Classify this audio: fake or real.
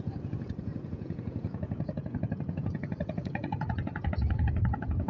fake